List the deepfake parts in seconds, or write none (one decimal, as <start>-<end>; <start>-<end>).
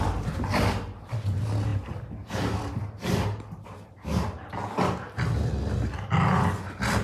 none